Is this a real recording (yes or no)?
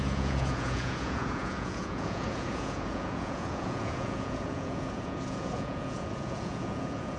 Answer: no